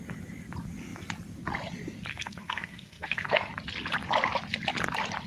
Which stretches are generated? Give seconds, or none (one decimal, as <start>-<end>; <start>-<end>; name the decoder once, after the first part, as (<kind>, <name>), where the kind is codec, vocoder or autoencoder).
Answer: 2.1-3.5 (codec, SNAC)